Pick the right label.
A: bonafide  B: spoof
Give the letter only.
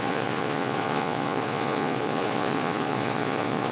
B